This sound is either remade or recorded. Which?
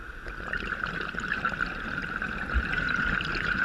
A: recorded